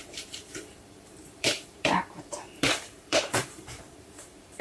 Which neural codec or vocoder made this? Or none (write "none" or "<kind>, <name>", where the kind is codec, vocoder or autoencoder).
vocoder, BigVGAN v2